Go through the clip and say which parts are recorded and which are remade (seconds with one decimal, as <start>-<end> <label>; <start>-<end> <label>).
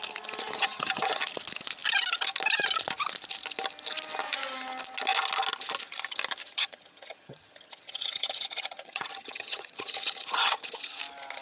0.0-0.6 recorded; 0.6-1.2 remade; 1.2-6.4 recorded; 6.4-11.0 remade; 11.0-11.4 recorded